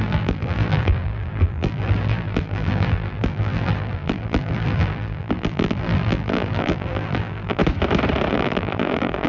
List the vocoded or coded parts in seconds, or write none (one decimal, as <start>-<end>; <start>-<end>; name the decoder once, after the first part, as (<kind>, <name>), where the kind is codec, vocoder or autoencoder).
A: 0.0-7.6 (vocoder, BigVGAN v2); 8.3-9.3